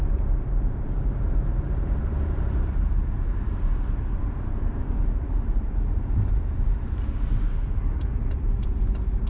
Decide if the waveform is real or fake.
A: fake